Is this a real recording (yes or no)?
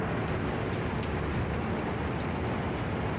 yes